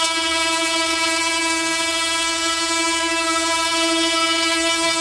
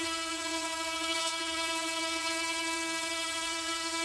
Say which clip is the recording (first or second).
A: first